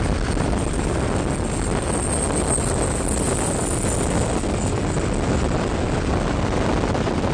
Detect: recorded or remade recorded